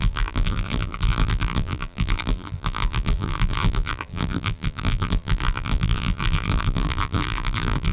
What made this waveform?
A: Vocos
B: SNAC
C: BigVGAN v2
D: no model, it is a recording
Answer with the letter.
C